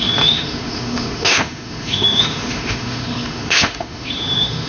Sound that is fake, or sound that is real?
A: fake